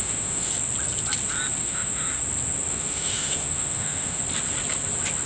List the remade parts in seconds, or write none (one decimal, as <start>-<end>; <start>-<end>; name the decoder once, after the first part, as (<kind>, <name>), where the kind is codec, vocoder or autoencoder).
0.0-0.5 (autoencoder, DAC-VAE); 1.6-2.1; 2.7-4.2